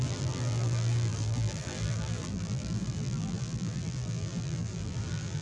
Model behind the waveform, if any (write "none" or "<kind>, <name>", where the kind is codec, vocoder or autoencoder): vocoder, BigVGAN v2